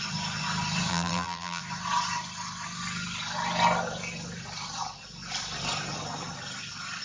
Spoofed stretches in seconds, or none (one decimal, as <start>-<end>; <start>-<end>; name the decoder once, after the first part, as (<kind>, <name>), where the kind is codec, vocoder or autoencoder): 0.9-1.6 (vocoder, BigVGAN v2)